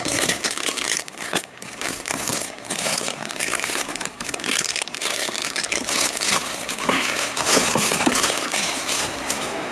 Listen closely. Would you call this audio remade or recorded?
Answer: remade